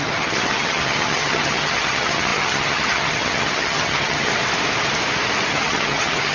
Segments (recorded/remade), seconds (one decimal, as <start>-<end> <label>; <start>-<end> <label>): 0.0-4.3 remade; 4.3-5.5 recorded; 5.5-6.3 remade